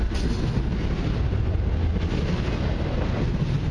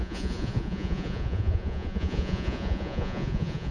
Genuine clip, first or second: first